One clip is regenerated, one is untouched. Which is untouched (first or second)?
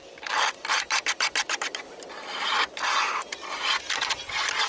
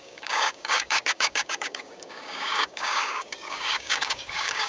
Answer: first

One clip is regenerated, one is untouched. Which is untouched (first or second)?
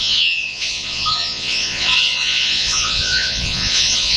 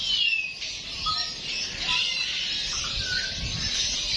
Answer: second